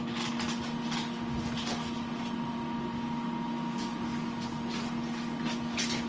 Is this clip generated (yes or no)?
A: no